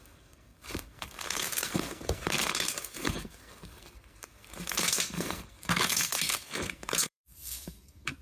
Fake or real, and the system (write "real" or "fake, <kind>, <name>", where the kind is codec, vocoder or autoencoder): fake, codec, SNAC